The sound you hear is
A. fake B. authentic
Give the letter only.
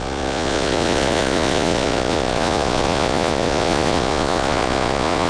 A